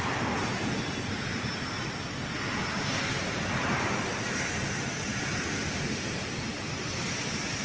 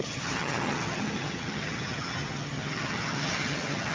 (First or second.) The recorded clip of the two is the first